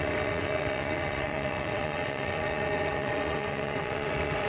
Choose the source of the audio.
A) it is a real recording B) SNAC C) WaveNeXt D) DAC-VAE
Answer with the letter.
C